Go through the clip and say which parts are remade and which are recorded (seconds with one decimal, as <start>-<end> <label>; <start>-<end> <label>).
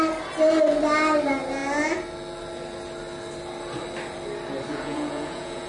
0.0-4.7 recorded; 4.7-5.7 remade